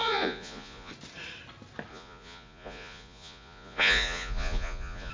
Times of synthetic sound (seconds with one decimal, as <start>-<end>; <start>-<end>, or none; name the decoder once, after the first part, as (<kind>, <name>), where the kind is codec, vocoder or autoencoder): 0.0-0.9 (vocoder, Vocos); 1.9-5.1